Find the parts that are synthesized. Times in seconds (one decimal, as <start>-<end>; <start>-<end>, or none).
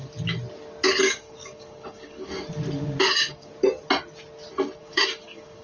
1.0-2.3; 3.0-3.5; 4.8-5.6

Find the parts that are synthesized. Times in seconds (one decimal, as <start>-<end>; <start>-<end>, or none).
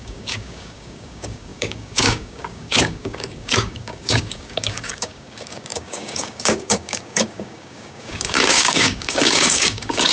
0.0-10.1